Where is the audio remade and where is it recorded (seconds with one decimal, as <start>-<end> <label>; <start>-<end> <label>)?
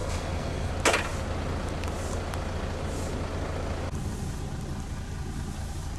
0.0-0.7 remade; 0.7-6.0 recorded